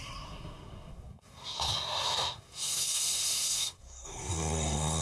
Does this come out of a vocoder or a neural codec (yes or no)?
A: yes